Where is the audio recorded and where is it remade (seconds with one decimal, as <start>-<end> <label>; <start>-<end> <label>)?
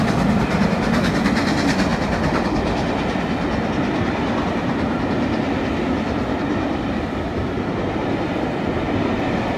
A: 0.0-9.6 recorded